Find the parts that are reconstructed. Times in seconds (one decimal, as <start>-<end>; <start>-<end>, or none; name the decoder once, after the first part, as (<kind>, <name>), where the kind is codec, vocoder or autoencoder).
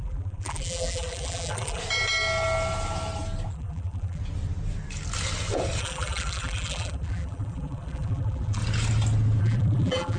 0.0-1.8 (vocoder, BigVGAN v2); 3.5-4.2; 5.8-8.6; 9.4-10.2